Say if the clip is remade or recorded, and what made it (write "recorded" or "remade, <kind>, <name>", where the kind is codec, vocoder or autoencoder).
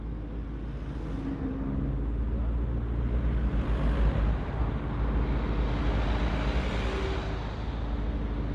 recorded